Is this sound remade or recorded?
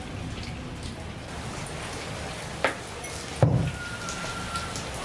recorded